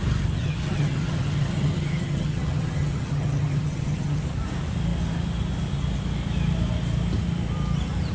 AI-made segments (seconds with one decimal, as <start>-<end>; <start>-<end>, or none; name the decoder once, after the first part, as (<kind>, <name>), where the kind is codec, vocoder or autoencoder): 0.4-4.2 (vocoder, HiFi-GAN)